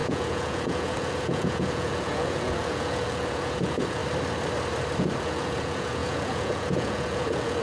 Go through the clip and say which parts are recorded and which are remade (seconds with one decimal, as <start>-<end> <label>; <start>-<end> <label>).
0.0-4.0 remade; 4.0-5.0 recorded; 5.0-7.6 remade